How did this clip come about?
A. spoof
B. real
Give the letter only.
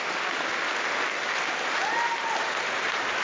B